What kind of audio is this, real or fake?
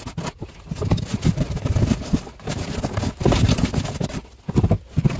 real